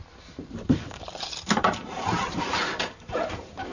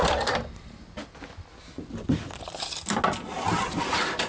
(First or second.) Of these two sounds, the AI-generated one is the first